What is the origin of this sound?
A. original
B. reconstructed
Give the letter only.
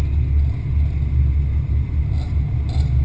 A